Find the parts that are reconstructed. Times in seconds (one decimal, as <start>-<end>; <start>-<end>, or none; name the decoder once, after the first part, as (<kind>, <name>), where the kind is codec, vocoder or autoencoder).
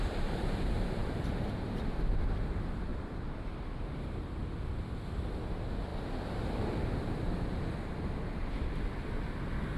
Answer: 2.9-3.5 (vocoder, BigVGAN v2)